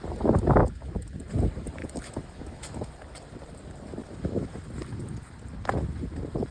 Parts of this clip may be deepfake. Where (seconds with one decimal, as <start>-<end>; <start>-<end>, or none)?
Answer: 0.6-1.3; 1.8-2.9; 4.0-4.5